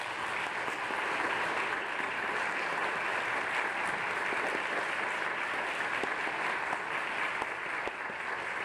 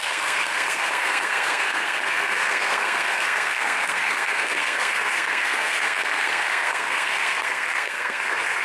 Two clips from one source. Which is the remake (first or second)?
second